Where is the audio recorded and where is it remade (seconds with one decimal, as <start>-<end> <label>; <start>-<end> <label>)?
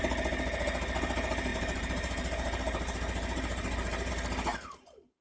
0.0-1.5 recorded; 1.5-4.1 remade; 4.1-4.5 recorded; 4.5-5.2 remade